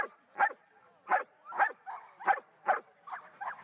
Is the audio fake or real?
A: fake